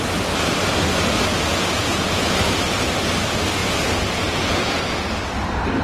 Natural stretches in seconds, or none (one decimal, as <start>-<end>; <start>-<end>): 0.0-1.5; 2.2-3.6; 4.8-5.8